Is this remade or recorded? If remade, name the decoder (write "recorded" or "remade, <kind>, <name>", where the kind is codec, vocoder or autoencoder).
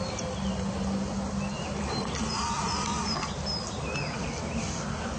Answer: recorded